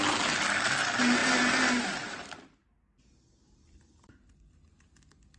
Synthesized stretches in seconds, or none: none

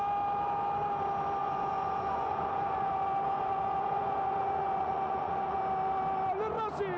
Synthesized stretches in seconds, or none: 1.4-5.6

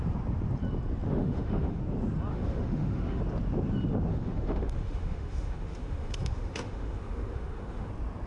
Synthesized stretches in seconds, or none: 1.1-1.8; 2.3-3.2; 4.1-7.9

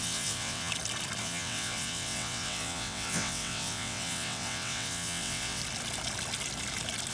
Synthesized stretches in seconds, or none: 0.0-0.7; 1.2-5.6

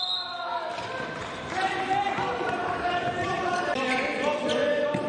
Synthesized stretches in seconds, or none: none